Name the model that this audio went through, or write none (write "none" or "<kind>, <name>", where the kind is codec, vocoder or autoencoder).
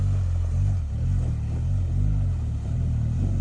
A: none